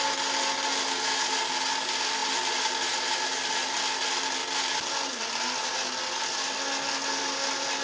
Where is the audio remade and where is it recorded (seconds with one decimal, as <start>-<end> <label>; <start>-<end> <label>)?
0.0-7.8 recorded